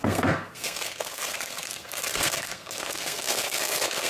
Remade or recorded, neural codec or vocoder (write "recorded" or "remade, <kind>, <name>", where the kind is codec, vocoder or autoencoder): remade, codec, SNAC